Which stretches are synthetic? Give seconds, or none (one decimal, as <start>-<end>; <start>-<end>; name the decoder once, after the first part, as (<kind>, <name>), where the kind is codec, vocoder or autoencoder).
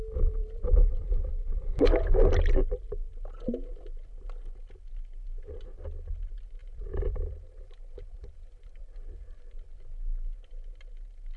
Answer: 0.4-1.8 (vocoder, BigVGAN v2); 6.6-9.5